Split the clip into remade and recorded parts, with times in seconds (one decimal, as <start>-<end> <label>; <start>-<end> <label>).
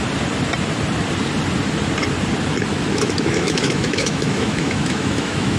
0.0-2.7 recorded; 2.7-5.6 remade